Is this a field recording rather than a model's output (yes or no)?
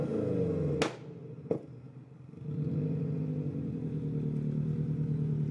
yes